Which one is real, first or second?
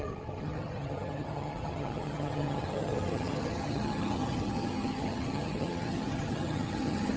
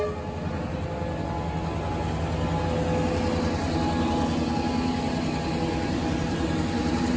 second